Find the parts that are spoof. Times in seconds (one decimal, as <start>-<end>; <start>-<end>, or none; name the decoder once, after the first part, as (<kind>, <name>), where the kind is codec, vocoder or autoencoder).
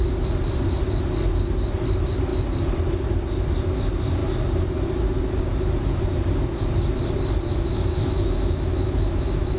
7.5-9.6 (autoencoder, DAC-VAE)